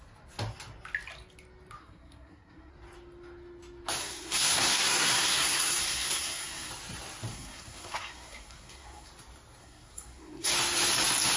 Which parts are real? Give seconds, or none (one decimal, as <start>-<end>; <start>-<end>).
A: 0.0-1.8; 2.7-4.0; 6.7-7.3; 9.1-9.6; 10.5-11.4